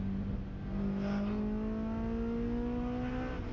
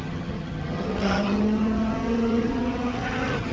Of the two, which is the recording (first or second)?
first